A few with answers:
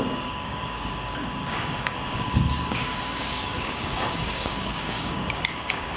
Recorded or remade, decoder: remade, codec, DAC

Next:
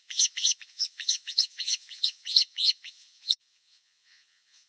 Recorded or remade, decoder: remade, vocoder, Vocos